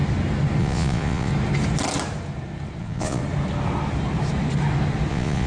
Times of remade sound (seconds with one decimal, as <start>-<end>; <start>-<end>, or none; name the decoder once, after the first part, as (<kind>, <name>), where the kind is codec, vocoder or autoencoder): 0.6-1.3 (vocoder, Vocos); 2.8-3.2; 5.1-5.5